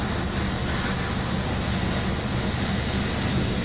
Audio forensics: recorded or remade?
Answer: recorded